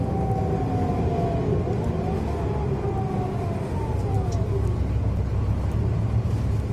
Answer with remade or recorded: recorded